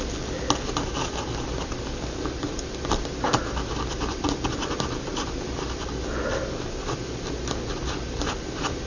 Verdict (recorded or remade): recorded